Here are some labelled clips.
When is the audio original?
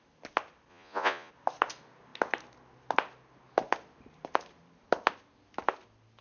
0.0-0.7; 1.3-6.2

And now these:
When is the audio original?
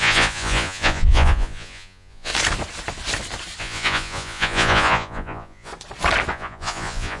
2.3-3.6; 5.7-6.3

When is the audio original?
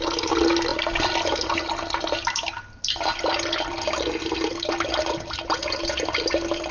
0.0-6.7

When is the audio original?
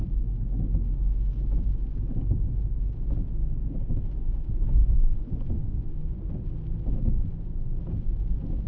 0.0-5.0; 6.3-8.7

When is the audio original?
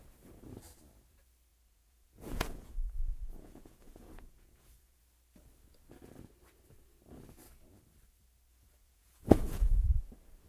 0.0-1.5; 5.0-8.5; 10.1-10.5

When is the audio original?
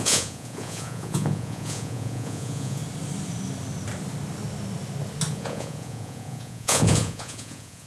2.8-5.3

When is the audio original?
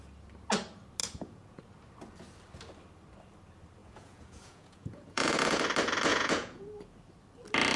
0.0-1.0; 1.6-3.8; 5.6-6.1; 6.7-7.8